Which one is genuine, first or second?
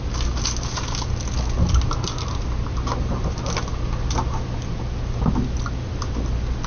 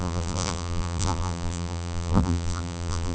first